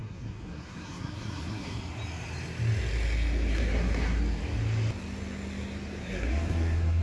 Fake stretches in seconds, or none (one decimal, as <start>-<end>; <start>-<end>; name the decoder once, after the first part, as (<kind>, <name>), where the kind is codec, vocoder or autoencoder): 0.0-1.8 (codec, SNAC); 3.5-4.2; 6.0-7.0